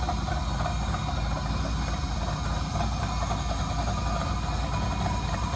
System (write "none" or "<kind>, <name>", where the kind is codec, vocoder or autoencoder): none